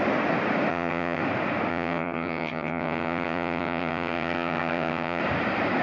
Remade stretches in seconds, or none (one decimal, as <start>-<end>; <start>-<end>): 0.7-1.2; 1.7-5.2